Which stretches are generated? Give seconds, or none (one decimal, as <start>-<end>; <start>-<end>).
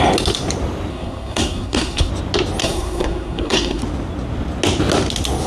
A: 0.9-2.1; 2.6-3.8